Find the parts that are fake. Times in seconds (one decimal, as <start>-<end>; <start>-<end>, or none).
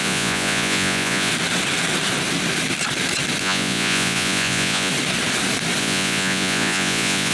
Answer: 0.0-1.3; 3.4-4.9; 5.8-7.3